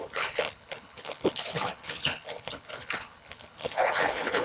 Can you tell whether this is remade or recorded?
remade